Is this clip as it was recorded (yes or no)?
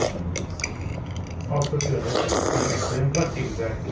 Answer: yes